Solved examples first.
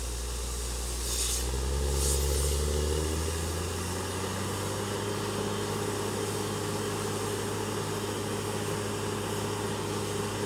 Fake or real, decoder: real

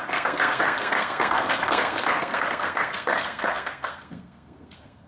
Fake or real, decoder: fake, codec, SNAC